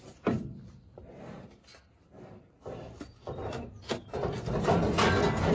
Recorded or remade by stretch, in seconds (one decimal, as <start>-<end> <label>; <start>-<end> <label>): 0.0-5.5 recorded